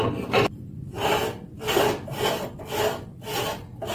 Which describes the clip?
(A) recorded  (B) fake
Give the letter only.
B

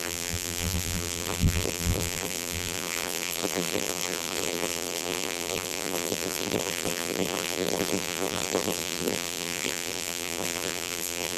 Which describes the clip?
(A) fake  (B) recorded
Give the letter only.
A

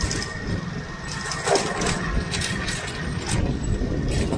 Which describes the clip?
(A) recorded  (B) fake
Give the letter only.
A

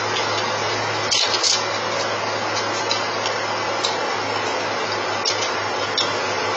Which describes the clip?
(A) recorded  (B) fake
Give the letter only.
A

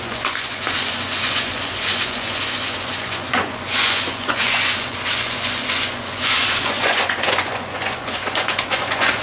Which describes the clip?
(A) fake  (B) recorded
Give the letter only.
A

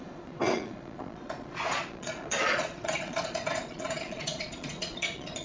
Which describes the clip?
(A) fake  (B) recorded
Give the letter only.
A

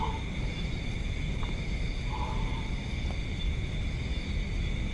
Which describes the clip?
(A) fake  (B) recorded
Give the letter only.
B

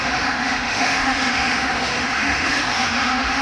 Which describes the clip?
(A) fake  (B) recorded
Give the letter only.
A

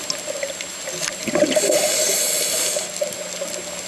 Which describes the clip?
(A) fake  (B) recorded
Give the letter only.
B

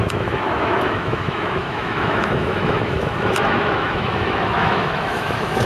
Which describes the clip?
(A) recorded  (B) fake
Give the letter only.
B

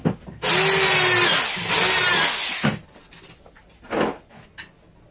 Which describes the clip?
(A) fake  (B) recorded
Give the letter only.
B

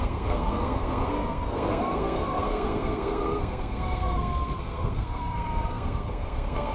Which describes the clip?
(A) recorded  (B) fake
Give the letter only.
B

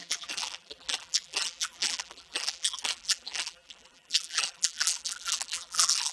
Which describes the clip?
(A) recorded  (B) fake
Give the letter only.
B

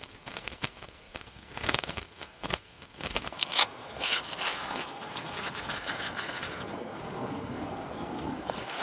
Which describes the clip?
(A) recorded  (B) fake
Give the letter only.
B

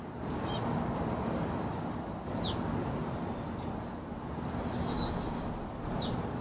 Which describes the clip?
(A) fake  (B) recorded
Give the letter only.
B